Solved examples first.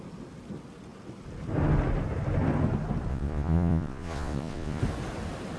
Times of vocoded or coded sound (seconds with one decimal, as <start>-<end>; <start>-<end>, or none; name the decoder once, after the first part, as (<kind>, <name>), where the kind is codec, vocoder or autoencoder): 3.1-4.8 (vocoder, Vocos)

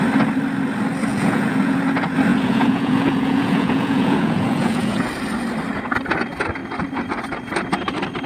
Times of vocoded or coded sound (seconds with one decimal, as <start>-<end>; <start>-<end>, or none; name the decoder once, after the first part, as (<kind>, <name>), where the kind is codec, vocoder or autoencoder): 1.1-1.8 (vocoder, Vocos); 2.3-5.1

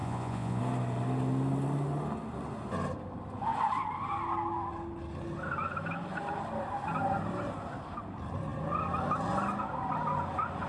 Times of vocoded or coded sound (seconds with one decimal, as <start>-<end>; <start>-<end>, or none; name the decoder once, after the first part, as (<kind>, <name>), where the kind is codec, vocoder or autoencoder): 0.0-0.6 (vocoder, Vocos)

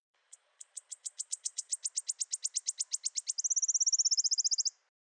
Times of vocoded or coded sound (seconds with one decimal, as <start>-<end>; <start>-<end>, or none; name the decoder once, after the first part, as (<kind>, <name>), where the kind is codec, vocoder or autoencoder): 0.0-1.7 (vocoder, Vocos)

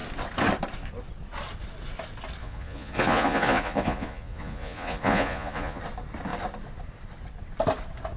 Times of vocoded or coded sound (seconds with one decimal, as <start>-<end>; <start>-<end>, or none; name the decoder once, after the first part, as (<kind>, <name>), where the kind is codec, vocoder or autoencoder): 2.4-5.8 (vocoder, Vocos)

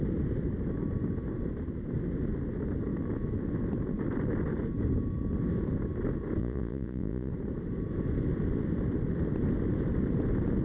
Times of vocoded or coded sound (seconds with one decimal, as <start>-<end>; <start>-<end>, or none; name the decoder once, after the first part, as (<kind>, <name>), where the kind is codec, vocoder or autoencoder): 6.4-7.3 (vocoder, Vocos)

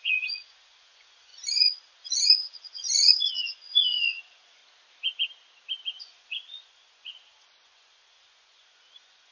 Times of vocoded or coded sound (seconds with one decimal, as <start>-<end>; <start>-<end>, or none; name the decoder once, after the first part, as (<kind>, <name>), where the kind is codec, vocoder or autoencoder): 0.0-4.6 (vocoder, Vocos); 6.0-9.3

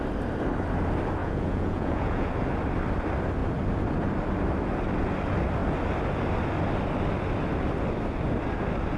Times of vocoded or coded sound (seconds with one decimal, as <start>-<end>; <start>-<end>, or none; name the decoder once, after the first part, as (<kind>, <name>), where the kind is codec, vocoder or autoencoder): 1.2-2.3 (vocoder, Vocos)